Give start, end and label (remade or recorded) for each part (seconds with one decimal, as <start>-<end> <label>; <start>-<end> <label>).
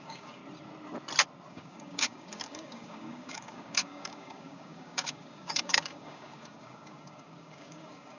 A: 0.0-0.4 remade; 0.4-1.5 recorded; 1.5-8.2 remade